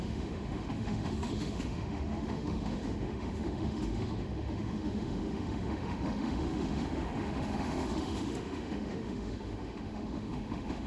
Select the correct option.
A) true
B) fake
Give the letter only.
B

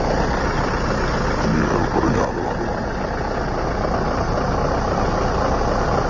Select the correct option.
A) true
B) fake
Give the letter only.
A